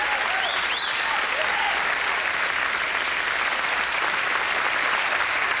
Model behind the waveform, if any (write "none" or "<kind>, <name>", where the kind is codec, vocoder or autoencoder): none